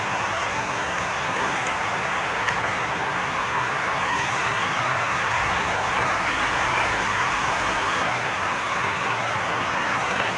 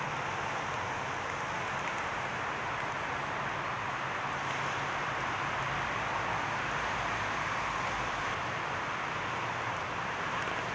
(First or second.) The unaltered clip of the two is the second